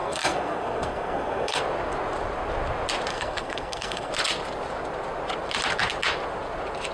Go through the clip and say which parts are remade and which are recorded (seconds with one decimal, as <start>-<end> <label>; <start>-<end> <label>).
0.0-1.6 remade; 1.6-3.1 recorded; 3.1-4.1 remade; 4.1-6.9 recorded